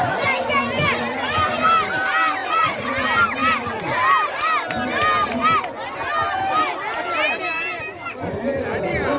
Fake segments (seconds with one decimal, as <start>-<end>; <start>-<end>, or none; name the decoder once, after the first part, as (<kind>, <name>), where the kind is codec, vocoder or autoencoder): 2.4-2.9 (vocoder, Vocos)